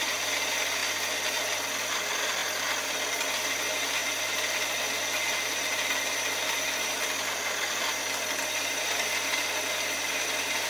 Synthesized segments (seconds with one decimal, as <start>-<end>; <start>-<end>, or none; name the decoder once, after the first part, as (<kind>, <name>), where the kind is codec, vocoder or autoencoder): none